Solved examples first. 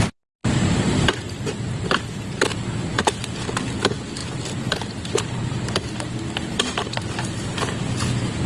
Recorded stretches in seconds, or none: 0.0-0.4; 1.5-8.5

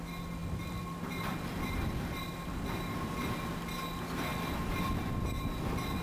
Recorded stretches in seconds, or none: 0.0-0.4; 2.0-4.3; 5.1-6.0

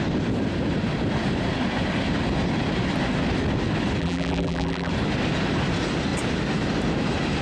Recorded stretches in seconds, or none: 0.0-4.0; 4.9-7.4

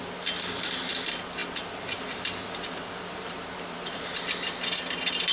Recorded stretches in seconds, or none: 0.0-1.4; 4.2-5.3

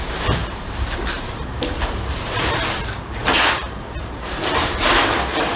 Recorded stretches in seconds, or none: none

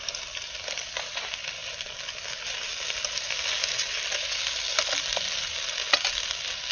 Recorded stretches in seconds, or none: 0.0-6.7

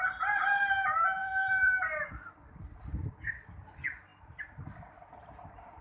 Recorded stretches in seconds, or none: 0.0-1.2; 3.1-4.1